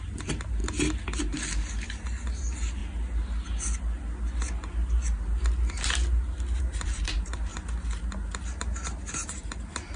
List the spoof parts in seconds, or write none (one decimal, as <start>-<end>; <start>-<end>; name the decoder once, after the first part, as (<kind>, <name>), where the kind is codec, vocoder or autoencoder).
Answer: 0.0-0.6 (vocoder, BigVGAN v2); 1.2-2.8; 6.6-7.5; 9.1-10.0